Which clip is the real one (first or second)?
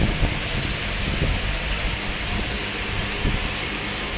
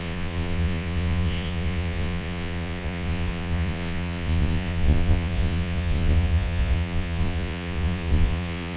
first